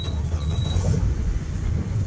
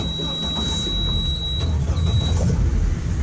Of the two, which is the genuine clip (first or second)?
second